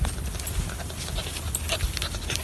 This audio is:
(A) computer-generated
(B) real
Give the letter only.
B